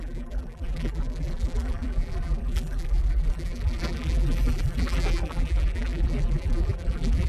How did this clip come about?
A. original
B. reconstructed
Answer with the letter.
B